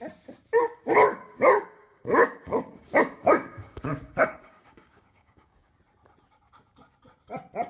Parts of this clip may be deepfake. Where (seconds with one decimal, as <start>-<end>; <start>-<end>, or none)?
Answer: 1.1-5.7